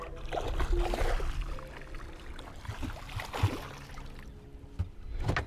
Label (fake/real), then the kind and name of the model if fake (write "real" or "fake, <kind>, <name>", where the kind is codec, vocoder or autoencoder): real